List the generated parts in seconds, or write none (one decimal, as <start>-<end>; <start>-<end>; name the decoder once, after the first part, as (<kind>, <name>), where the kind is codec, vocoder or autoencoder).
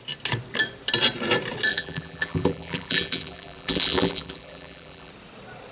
1.7-5.1 (vocoder, BigVGAN v2)